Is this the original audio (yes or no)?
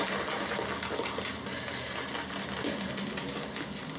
yes